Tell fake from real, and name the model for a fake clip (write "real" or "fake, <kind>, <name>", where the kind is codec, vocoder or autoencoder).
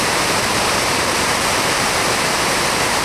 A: fake, vocoder, BigVGAN v2